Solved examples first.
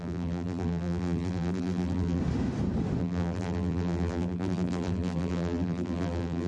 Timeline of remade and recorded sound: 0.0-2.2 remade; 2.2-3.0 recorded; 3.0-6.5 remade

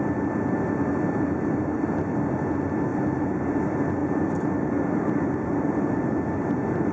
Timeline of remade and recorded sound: 0.0-2.9 recorded; 2.9-3.6 remade; 3.6-4.0 recorded; 4.0-6.0 remade; 6.0-6.9 recorded

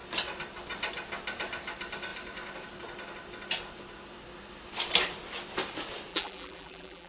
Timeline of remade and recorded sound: 0.0-6.1 recorded; 6.1-7.1 remade

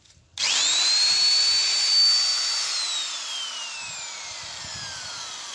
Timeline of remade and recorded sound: 0.0-5.5 recorded

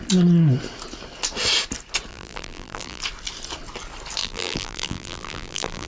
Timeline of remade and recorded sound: 0.0-2.1 recorded; 2.1-3.0 remade; 3.0-4.2 recorded; 4.2-5.9 remade

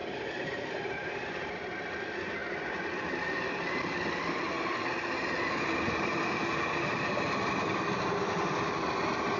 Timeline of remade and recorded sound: 0.0-1.1 remade; 1.1-9.4 recorded

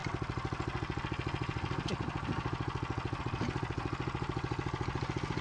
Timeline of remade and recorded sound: 0.0-5.4 recorded